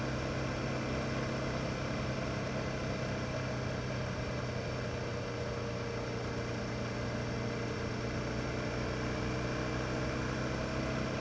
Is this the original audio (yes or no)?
yes